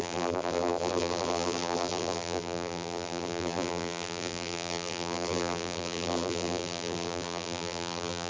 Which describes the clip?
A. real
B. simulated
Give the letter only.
B